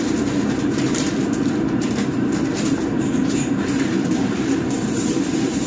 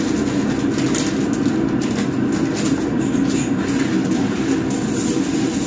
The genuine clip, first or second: second